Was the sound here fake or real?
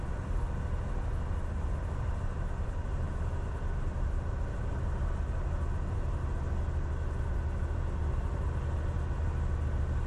real